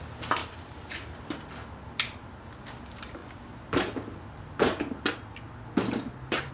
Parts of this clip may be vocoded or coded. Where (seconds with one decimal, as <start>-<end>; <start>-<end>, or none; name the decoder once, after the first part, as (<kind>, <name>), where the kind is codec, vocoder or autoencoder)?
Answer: 0.4-1.0 (vocoder, BigVGAN v2)